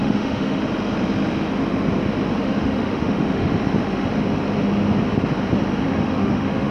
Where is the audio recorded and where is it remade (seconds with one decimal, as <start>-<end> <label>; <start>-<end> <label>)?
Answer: 0.0-0.6 remade; 0.6-2.4 recorded; 2.4-3.5 remade; 3.5-5.9 recorded; 5.9-6.7 remade